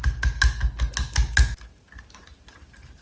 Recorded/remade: recorded